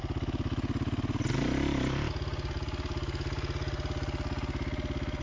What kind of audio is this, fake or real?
real